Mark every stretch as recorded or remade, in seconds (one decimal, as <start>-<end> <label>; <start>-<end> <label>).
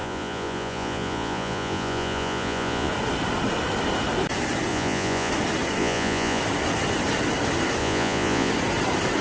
0.0-2.9 remade; 2.9-4.7 recorded; 4.7-5.3 remade; 5.3-5.8 recorded; 5.8-6.4 remade; 6.4-7.8 recorded; 7.8-8.5 remade; 8.5-9.2 recorded